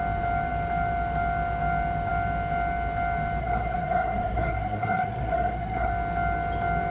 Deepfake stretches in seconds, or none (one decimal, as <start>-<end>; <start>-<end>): 3.4-5.9